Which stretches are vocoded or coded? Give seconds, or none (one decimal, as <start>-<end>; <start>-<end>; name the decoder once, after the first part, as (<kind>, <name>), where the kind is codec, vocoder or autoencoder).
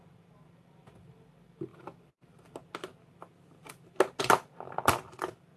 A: none